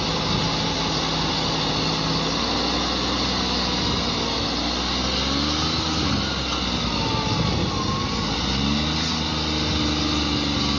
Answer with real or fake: real